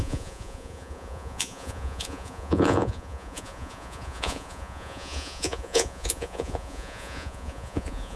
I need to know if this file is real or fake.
fake